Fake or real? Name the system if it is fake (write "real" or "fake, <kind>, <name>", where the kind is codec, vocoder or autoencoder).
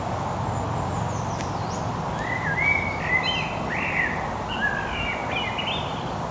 real